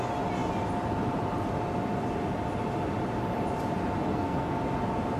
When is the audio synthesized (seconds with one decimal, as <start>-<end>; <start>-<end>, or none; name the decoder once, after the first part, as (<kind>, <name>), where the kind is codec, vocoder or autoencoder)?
4.1-4.6 (codec, SNAC)